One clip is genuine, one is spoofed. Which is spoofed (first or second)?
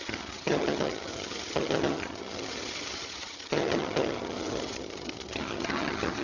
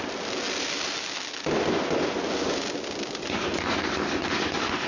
first